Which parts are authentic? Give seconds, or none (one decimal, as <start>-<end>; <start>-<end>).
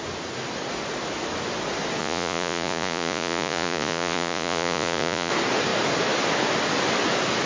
0.0-2.0; 5.3-7.5